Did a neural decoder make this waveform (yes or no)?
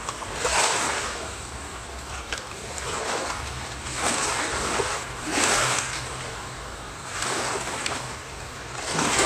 yes